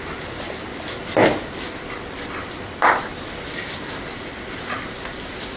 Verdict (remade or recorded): recorded